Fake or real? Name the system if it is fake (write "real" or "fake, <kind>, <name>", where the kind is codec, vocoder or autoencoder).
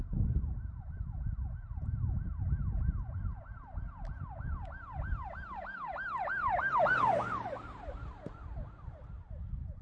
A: real